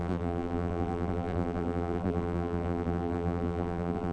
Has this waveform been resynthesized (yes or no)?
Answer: yes